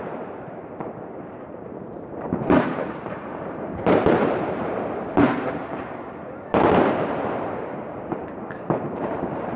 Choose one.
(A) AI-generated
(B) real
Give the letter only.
A